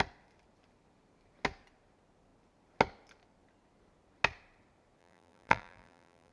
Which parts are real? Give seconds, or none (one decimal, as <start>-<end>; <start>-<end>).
0.0-5.0